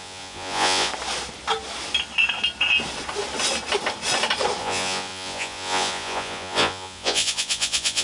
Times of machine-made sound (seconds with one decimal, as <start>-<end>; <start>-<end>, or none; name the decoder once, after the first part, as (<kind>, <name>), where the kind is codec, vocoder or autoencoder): 0.0-0.9 (vocoder, Vocos); 4.6-8.0

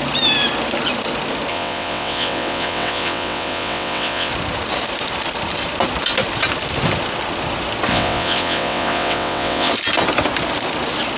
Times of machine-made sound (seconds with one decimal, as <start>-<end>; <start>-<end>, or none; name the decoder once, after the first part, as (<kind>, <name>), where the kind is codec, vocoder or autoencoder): 1.5-4.3 (vocoder, WaveNeXt); 7.9-9.7

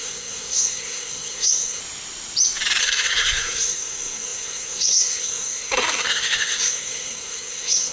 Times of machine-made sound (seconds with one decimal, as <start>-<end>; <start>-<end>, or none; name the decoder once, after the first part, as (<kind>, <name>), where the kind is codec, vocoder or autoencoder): 0.0-1.8 (codec, SNAC); 2.8-7.9

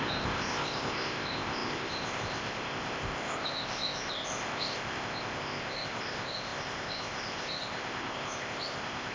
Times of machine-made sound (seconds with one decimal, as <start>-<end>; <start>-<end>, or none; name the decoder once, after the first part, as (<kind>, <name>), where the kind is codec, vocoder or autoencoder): 0.0-9.1 (codec, ZipCodec)

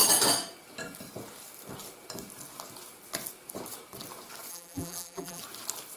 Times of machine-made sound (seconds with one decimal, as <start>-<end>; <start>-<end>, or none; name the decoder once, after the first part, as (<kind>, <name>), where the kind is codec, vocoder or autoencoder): 4.5-5.4 (vocoder, BigVGAN v2)

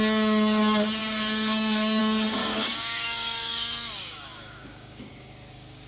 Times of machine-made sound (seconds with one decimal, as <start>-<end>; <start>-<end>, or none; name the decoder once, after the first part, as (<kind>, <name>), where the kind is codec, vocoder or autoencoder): 1.0-2.0 (codec, DAC); 2.4-5.9

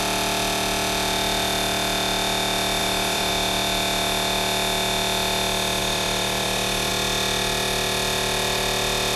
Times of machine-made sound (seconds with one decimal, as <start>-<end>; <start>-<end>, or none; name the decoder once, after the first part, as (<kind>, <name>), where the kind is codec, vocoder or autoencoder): 2.8-3.3 (vocoder, BigVGAN v2); 5.8-6.9